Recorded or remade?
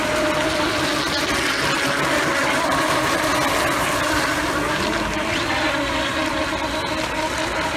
recorded